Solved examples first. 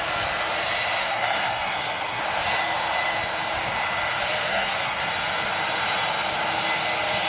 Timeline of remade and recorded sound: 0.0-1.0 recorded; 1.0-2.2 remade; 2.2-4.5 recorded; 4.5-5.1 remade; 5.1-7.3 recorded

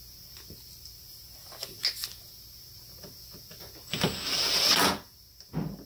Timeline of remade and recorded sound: 0.0-5.9 recorded

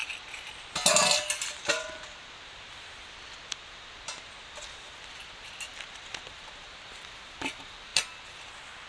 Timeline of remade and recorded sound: 0.0-8.9 recorded

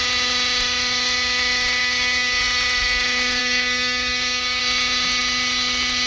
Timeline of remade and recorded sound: 0.0-1.8 recorded; 1.8-2.4 remade; 2.4-3.4 recorded; 3.4-4.6 remade; 4.6-6.1 recorded